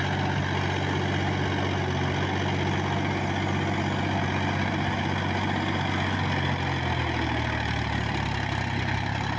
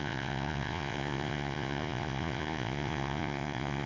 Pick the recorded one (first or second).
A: first